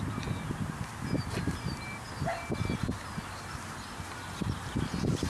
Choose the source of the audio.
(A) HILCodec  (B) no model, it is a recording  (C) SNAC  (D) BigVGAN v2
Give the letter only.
B